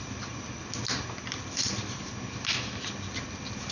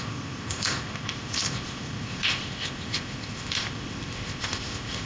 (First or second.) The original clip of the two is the first